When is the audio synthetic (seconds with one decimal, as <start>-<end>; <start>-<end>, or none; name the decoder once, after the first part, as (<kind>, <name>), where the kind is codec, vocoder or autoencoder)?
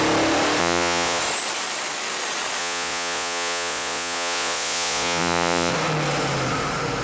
0.6-1.2 (vocoder, Vocos); 2.6-5.7